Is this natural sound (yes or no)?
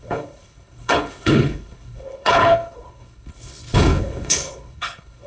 no